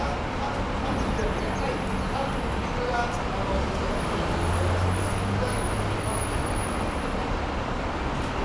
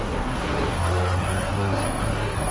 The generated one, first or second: second